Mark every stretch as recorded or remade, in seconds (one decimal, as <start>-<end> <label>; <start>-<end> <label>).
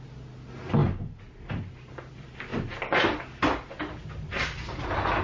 0.0-5.2 recorded